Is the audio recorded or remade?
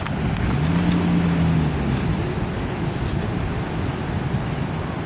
recorded